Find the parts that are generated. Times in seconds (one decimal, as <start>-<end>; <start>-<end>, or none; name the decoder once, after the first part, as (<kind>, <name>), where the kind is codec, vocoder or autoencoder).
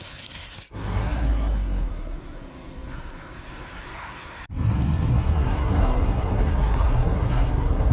0.0-7.9 (codec, SNAC)